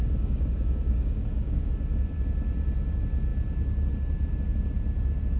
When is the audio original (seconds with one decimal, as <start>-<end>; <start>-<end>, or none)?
1.7-5.4